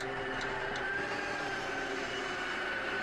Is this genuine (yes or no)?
no